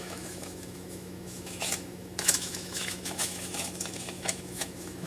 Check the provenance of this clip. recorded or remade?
remade